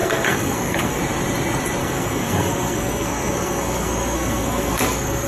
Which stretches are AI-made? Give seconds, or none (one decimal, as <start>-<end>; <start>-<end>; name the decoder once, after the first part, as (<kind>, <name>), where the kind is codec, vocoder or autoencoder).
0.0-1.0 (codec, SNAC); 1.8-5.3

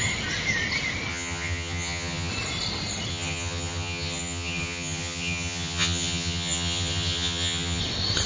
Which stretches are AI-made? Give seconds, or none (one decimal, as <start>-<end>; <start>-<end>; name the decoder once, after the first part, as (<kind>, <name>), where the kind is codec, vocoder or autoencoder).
1.1-2.3 (vocoder, HiFi-GAN); 3.1-7.8

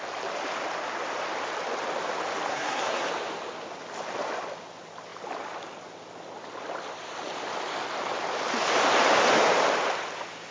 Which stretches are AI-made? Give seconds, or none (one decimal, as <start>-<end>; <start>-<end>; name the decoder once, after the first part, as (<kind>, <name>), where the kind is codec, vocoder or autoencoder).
2.5-3.1 (codec, SNAC)

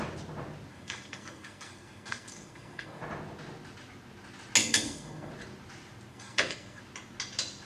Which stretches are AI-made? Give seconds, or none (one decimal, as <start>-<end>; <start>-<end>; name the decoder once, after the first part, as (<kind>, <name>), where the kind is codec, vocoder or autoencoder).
0.7-3.0 (codec, SNAC); 4.6-5.3; 6.1-6.8

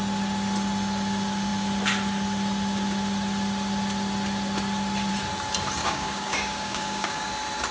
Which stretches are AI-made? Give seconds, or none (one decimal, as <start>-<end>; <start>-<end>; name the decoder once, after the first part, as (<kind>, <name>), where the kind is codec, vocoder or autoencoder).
5.8-7.3 (codec, DAC)

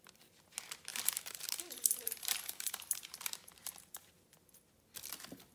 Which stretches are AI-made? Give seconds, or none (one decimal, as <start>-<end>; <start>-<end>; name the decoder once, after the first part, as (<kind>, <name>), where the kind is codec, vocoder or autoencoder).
0.9-4.2 (vocoder, BigVGAN v2)

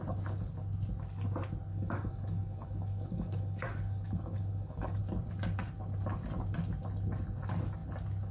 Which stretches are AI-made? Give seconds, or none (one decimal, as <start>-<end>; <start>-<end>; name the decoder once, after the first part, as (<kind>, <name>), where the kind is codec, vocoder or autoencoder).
1.7-5.0 (codec, DAC)